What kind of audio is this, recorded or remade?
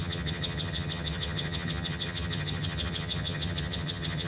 remade